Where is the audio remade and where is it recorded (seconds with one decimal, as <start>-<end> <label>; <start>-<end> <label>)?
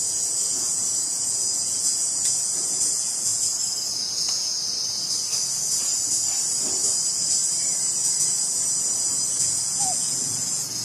0.0-4.5 remade; 4.5-9.3 recorded; 9.3-10.8 remade